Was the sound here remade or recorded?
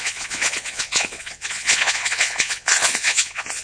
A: remade